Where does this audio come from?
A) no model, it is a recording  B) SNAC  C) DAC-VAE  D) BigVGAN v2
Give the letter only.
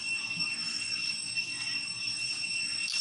A